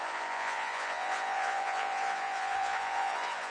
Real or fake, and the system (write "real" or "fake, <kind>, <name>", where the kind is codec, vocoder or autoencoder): fake, vocoder, Vocos